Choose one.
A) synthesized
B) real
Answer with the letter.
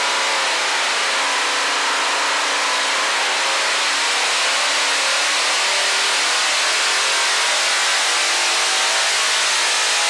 B